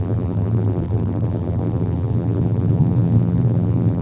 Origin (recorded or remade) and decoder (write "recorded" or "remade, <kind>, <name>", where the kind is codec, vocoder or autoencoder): remade, vocoder, BigVGAN v2